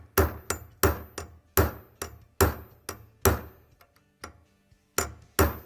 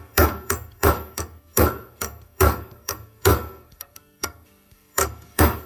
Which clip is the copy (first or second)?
second